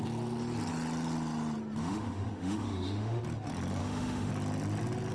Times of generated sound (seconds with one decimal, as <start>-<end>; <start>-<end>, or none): 1.8-3.2; 3.8-4.3